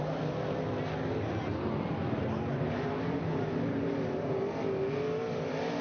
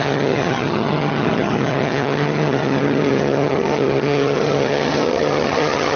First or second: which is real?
first